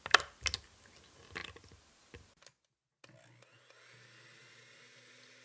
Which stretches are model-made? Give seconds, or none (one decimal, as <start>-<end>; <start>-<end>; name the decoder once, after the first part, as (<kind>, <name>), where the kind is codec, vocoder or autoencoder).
none